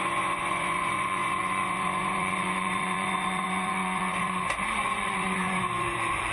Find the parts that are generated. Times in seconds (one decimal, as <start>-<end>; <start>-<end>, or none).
0.0-6.3